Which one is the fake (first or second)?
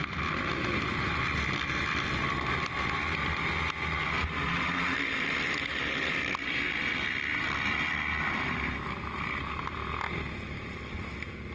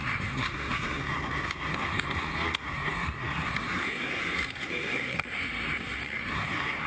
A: second